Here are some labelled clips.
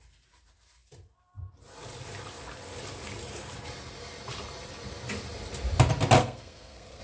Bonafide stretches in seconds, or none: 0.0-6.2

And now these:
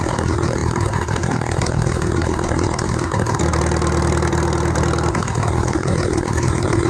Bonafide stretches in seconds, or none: 3.4-5.1

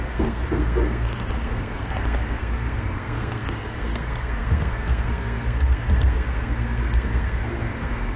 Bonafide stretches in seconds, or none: none

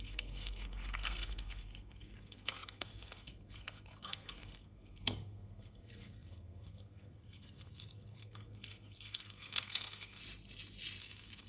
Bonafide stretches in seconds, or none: 10.2-11.0

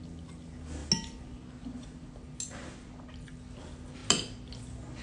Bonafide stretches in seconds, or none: 0.0-5.0

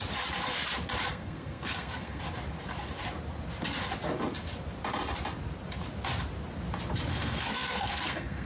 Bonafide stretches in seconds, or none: 0.0-1.1; 2.2-7.1